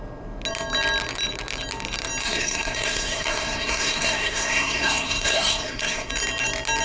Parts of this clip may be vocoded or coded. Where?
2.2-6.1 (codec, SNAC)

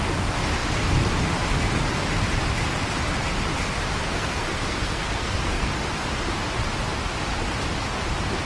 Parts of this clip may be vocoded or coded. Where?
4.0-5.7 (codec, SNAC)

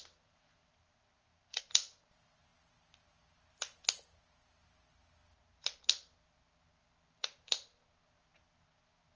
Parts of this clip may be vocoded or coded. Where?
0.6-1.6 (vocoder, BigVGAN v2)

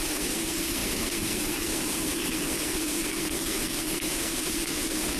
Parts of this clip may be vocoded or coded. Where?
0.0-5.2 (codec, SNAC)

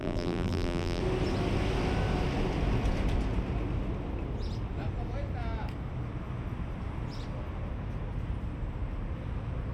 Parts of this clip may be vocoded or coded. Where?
0.0-1.0 (vocoder, BigVGAN v2)

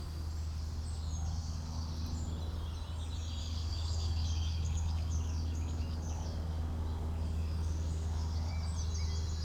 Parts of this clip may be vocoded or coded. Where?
1.4-2.0 (codec, DAC); 3.4-8.5